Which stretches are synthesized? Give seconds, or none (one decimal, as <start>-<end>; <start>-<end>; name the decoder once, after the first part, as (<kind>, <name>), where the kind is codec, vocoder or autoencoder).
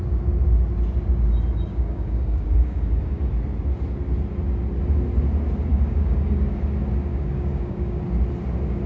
1.7-3.3 (codec, DAC); 5.7-6.6; 7.1-8.0